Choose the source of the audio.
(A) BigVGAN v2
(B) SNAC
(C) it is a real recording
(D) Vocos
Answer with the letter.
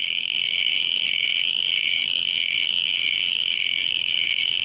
A